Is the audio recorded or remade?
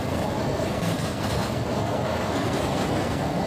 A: remade